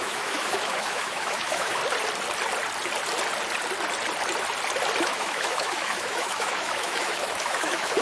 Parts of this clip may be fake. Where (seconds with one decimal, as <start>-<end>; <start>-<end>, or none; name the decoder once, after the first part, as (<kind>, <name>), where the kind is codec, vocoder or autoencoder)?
0.0-1.8 (autoencoder, DAC-VAE); 5.0-8.0